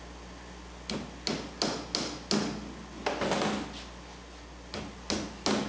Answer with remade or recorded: recorded